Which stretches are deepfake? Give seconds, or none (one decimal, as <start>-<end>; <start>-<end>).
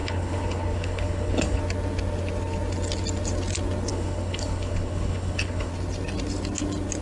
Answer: 0.0-1.6; 3.9-5.7